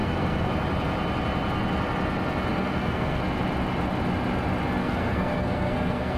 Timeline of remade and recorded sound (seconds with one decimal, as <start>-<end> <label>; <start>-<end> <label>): 0.0-0.5 remade; 0.5-2.5 recorded; 2.5-3.2 remade; 3.2-4.8 recorded; 4.8-6.2 remade